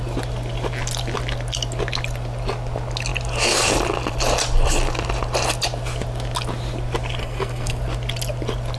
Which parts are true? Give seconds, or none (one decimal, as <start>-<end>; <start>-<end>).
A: 0.0-7.2; 7.8-8.8